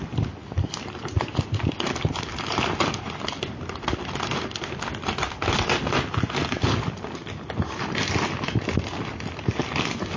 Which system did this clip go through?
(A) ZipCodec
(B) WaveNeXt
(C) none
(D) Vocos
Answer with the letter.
C